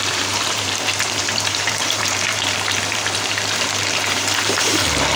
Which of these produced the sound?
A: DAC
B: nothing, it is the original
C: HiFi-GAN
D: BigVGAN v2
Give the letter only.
D